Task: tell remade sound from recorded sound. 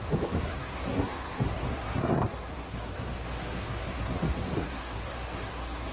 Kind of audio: remade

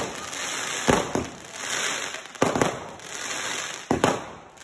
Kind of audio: recorded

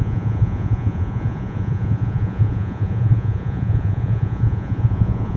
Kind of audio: remade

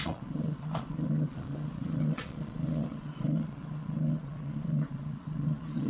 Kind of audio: remade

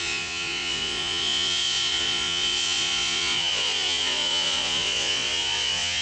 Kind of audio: remade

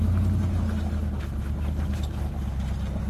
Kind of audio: recorded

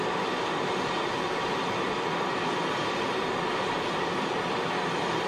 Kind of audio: remade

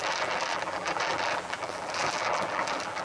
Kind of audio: remade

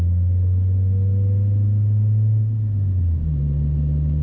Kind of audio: recorded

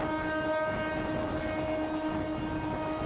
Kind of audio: recorded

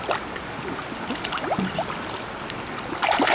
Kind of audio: recorded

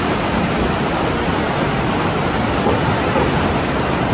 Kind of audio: recorded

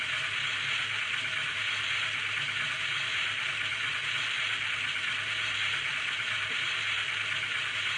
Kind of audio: recorded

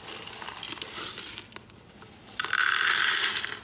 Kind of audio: recorded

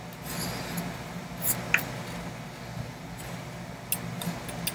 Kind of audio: recorded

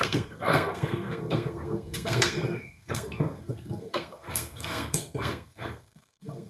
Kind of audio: remade